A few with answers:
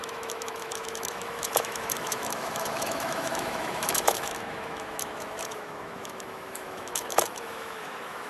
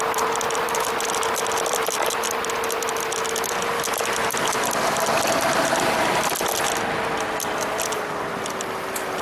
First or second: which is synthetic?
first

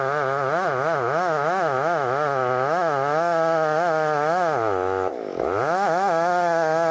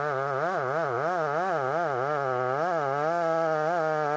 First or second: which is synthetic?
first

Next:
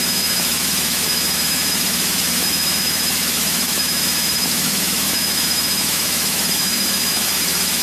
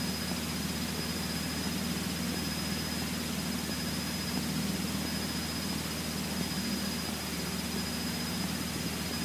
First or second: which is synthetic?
first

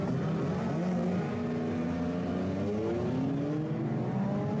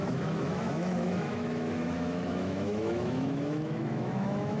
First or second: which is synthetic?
second